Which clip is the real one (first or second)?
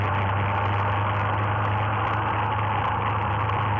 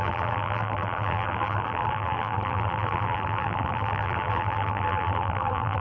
first